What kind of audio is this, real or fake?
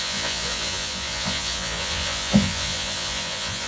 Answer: fake